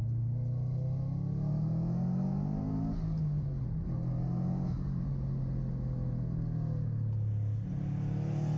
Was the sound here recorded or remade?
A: recorded